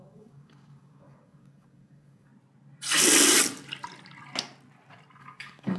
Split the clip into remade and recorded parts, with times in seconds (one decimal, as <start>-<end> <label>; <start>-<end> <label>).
0.0-2.3 remade; 2.3-5.2 recorded; 5.2-5.8 remade